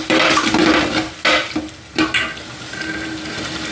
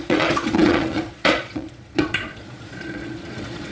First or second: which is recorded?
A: first